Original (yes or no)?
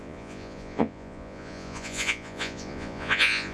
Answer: no